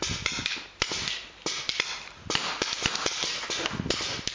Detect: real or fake real